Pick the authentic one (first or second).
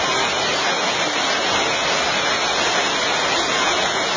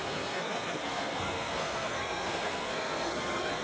first